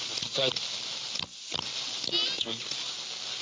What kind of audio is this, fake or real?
real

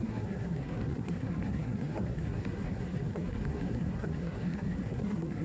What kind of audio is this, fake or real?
fake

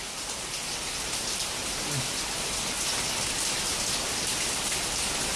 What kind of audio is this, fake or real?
real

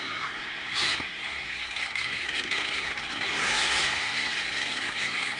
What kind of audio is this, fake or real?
fake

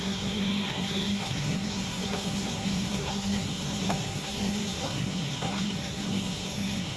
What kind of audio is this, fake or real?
fake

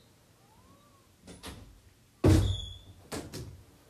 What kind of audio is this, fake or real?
real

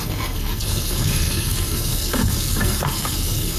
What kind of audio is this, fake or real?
fake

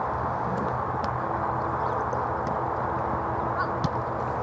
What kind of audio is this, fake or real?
real